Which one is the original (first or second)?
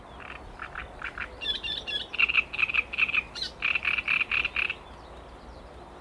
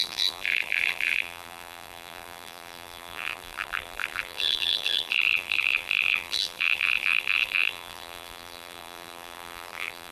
first